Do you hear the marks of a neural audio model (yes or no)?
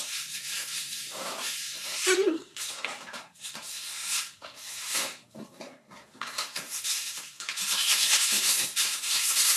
yes